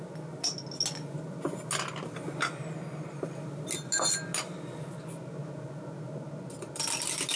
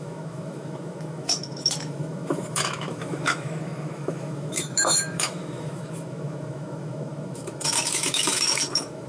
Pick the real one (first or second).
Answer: first